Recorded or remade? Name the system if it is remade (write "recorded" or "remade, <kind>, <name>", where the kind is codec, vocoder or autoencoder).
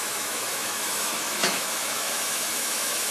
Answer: remade, autoencoder, DAC-VAE